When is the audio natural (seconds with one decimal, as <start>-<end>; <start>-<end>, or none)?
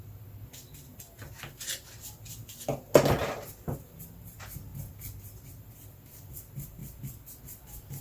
0.0-3.2; 3.7-4.7; 6.3-8.0